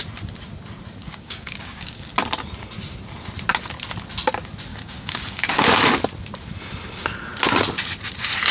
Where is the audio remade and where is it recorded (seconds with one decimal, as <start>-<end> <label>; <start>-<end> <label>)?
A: 0.0-1.0 recorded; 1.0-2.1 remade; 2.1-4.7 recorded; 4.7-5.8 remade; 5.8-8.5 recorded